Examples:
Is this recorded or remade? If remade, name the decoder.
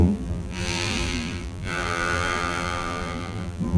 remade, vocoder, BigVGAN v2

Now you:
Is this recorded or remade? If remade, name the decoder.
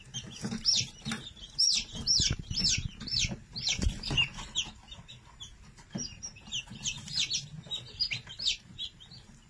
remade, vocoder, BigVGAN v2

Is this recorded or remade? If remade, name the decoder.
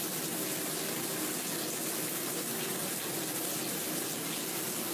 recorded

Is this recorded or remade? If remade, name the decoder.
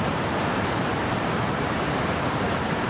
remade, vocoder, BigVGAN v2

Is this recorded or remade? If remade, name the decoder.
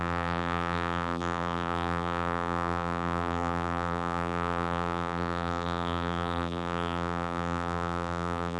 remade, vocoder, BigVGAN v2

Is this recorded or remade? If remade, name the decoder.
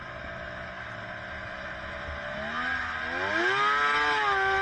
recorded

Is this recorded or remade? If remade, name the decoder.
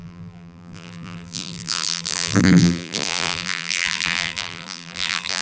remade, vocoder, BigVGAN v2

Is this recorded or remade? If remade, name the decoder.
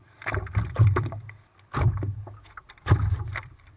remade, vocoder, BigVGAN v2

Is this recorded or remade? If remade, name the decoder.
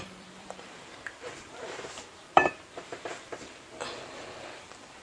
remade, vocoder, BigVGAN v2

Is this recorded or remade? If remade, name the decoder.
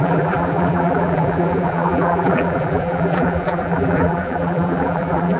remade, vocoder, BigVGAN v2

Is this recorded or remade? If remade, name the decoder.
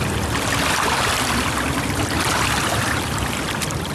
remade, vocoder, BigVGAN v2